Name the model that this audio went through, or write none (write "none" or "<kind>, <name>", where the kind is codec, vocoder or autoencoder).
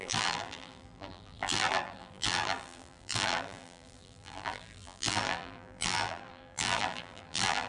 vocoder, BigVGAN v2